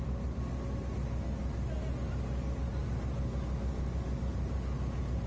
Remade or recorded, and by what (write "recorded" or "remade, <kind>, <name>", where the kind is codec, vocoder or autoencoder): recorded